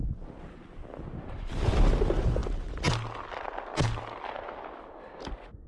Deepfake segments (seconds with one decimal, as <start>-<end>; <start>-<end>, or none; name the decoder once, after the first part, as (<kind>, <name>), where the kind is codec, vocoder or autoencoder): none

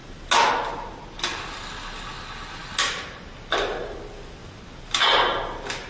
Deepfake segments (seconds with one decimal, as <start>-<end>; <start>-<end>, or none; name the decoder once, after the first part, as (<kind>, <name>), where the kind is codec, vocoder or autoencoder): none

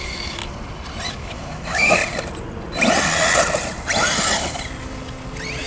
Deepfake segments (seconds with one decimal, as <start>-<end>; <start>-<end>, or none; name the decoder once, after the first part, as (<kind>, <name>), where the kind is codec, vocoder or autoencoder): 0.0-0.4 (autoencoder, DAC-VAE); 1.1-2.0

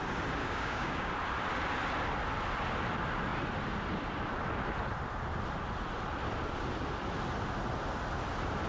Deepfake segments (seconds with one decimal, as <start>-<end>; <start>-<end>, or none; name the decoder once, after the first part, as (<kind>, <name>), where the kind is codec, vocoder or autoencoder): 0.4-1.1 (codec, DAC)

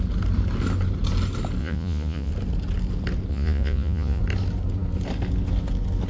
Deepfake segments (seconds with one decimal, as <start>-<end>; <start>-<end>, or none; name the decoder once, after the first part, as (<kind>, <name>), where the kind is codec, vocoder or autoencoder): 1.6-2.3 (vocoder, Vocos); 3.3-4.2